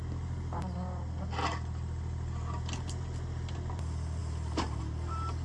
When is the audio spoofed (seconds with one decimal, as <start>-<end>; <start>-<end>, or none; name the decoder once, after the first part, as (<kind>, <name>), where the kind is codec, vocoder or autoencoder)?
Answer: none